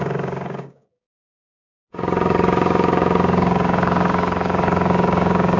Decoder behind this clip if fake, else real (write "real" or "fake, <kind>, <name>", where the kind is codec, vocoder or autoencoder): fake, codec, DAC